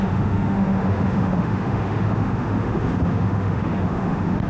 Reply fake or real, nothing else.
fake